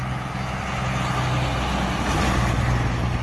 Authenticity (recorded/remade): recorded